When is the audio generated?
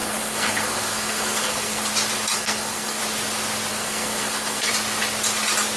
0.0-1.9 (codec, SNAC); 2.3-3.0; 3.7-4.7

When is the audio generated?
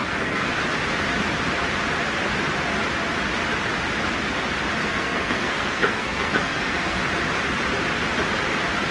0.0-0.5 (codec, SNAC); 4.8-7.0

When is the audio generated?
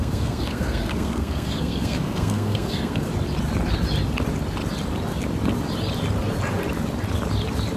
0.0-3.1 (codec, SNAC)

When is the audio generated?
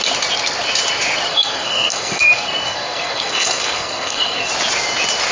1.3-4.5 (codec, SNAC)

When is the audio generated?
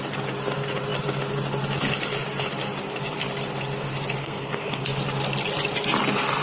4.2-4.8 (codec, SNAC)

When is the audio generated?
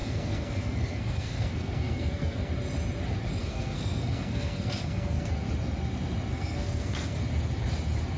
0.0-2.5 (codec, SNAC); 3.4-5.3; 6.3-7.2